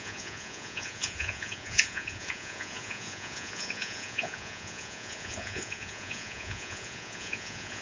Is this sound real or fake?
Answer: fake